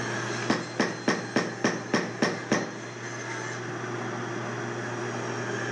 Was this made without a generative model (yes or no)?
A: yes